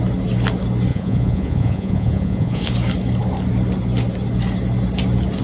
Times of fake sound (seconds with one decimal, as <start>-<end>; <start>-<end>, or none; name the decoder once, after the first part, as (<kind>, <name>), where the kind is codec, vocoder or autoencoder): 0.9-2.7 (vocoder, Vocos)